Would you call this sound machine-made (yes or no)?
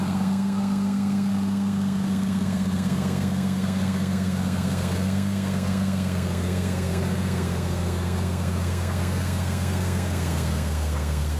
yes